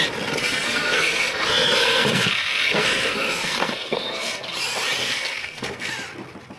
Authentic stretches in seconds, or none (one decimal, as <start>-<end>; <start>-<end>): 0.0-0.4; 4.4-5.0; 5.9-6.6